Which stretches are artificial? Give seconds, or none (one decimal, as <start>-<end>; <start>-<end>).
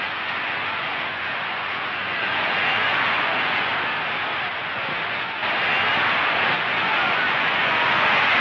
0.0-3.7; 4.5-5.4; 6.2-8.4